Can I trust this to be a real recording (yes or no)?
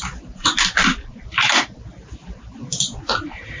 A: yes